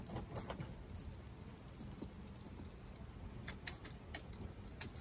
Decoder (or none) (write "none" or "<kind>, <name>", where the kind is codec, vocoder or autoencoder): none